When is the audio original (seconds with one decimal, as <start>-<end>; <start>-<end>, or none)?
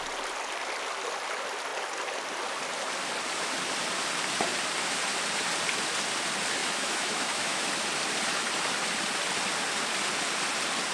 0.0-6.6; 7.7-10.9